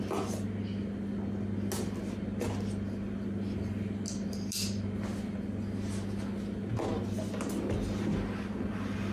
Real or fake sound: real